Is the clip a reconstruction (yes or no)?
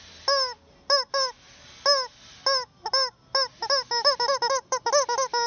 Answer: no